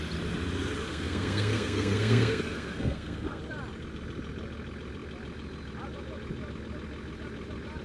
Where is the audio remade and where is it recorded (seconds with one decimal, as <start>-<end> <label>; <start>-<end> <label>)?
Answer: 0.0-0.9 recorded; 0.9-3.4 remade; 3.4-7.8 recorded

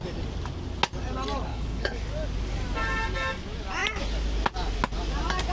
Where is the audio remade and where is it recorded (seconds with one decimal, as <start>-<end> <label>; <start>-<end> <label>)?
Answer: 0.0-1.5 recorded; 1.5-2.0 remade; 2.0-5.5 recorded

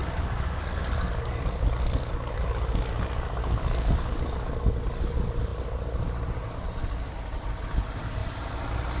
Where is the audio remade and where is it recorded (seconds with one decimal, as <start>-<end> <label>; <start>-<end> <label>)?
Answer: 0.0-4.7 remade; 4.7-9.0 recorded